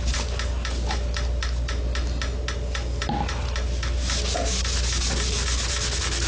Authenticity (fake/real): real